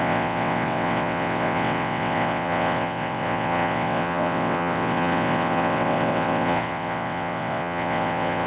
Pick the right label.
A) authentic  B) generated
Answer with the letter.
B